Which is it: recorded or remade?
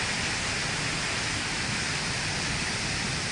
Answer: recorded